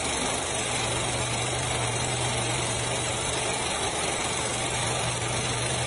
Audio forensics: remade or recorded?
remade